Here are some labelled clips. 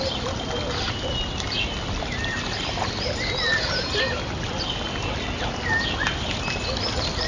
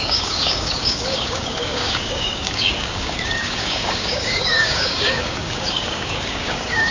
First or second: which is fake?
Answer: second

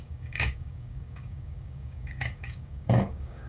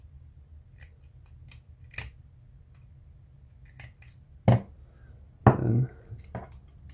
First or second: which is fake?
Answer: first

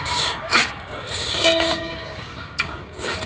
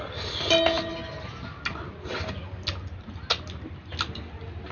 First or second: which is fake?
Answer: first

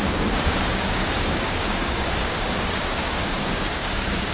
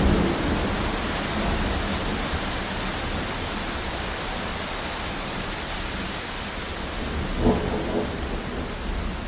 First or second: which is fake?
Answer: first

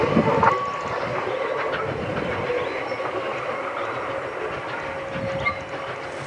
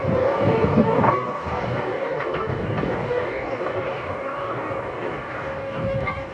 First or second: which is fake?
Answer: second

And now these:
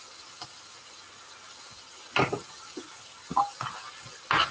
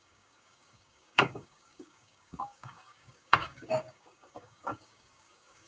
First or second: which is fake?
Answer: second